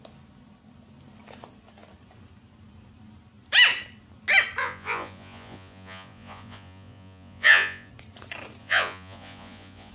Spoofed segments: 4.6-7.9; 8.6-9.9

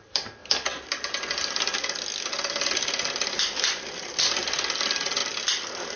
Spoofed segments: none